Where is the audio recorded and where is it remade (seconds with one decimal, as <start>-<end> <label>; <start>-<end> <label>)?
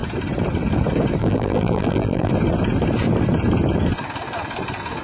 0.0-1.2 recorded; 1.2-2.3 remade; 2.3-5.0 recorded